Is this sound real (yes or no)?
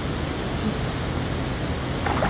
yes